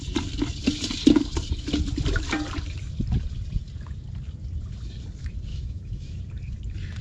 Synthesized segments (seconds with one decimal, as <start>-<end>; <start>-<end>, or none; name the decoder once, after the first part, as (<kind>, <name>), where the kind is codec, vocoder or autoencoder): 5.5-6.2 (autoencoder, DAC-VAE)